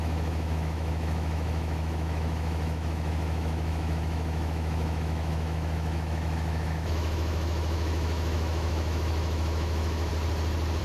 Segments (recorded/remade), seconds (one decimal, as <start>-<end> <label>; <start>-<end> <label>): 0.0-10.1 remade; 10.1-10.8 recorded